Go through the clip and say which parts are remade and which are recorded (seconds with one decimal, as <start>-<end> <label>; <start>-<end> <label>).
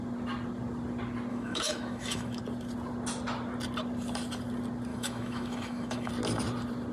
0.0-1.3 recorded; 1.3-2.4 remade; 2.4-4.9 recorded; 4.9-6.1 remade; 6.1-6.9 recorded